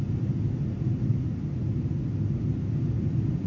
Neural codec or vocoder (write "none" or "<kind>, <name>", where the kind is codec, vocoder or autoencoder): none